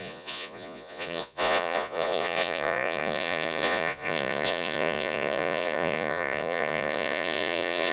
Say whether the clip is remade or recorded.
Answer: remade